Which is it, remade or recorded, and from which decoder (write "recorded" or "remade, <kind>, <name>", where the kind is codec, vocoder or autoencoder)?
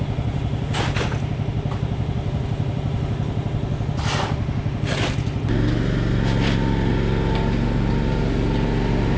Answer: recorded